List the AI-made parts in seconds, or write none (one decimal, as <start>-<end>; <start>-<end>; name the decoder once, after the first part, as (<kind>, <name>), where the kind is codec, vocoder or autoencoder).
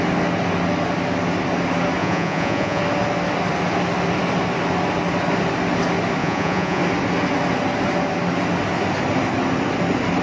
2.0-2.8 (vocoder, Vocos); 6.2-6.8